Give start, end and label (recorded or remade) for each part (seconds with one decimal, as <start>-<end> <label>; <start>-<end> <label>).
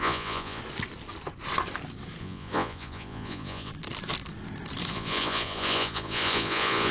0.0-0.6 remade; 0.6-2.2 recorded; 2.2-3.7 remade; 3.7-4.9 recorded; 4.9-6.9 remade